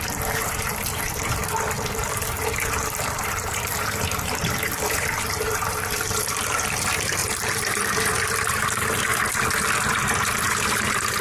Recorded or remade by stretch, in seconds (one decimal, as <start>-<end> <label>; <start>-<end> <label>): 0.0-1.4 remade; 1.4-2.0 recorded; 2.0-9.1 remade; 9.1-9.9 recorded; 9.9-11.2 remade